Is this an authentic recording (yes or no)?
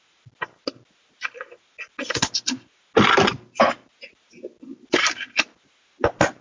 yes